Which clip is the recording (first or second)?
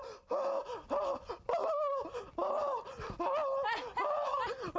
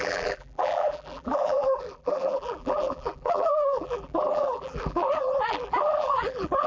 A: first